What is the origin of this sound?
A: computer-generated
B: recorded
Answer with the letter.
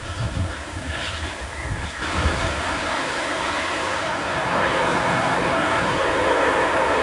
A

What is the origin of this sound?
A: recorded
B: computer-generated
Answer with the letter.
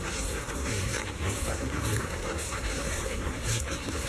B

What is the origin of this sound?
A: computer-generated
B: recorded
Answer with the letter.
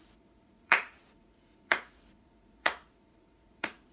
A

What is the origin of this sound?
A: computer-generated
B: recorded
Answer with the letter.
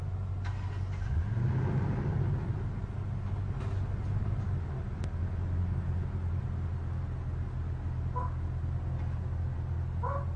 B